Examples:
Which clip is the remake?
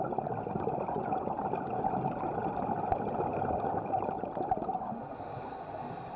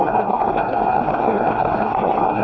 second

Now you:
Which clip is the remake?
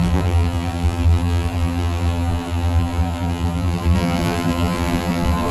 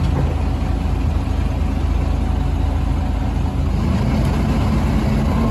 first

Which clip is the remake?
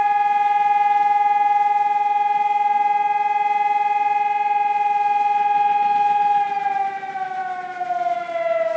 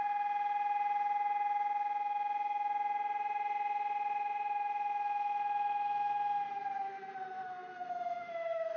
second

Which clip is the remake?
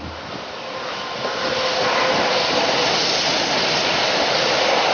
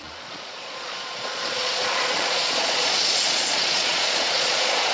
second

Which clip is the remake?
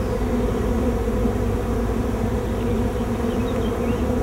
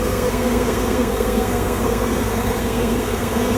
second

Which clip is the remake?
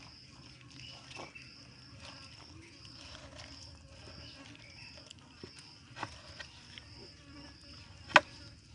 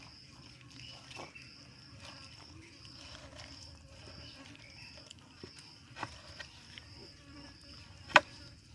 second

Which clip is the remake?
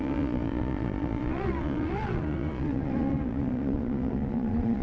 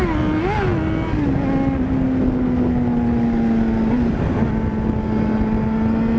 first